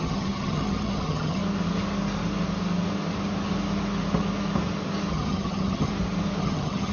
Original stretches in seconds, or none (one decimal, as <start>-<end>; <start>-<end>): 1.4-5.1; 5.9-6.4